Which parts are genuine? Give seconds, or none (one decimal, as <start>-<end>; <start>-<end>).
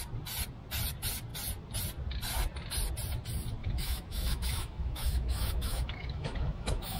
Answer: 0.0-3.6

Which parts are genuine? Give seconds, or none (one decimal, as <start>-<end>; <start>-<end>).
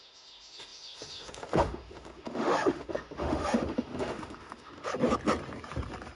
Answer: 4.9-6.2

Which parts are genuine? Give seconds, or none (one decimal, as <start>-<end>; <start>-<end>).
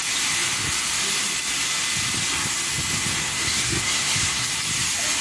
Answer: 0.0-3.2; 4.5-5.2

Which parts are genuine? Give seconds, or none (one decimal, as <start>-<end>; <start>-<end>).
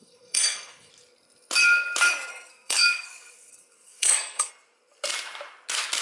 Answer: 0.9-2.3; 4.5-6.0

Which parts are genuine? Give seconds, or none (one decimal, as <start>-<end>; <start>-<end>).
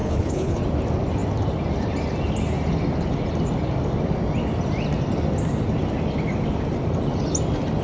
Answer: 0.6-7.8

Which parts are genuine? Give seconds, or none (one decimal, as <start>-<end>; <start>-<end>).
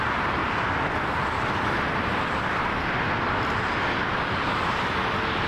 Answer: 0.0-5.5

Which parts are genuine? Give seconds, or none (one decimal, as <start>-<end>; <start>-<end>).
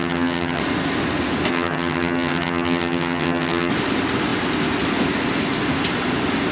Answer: 0.6-1.5; 3.7-6.5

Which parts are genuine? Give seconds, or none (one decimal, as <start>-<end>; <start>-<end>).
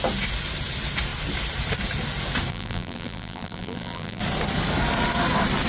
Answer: 0.0-2.5; 4.2-5.7